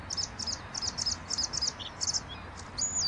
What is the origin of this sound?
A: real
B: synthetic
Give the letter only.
A